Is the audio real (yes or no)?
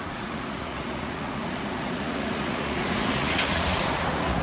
no